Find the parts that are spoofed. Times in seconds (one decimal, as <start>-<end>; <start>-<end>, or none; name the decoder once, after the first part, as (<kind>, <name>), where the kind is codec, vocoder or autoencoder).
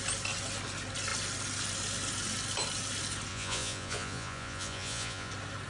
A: 3.3-5.3 (vocoder, Vocos)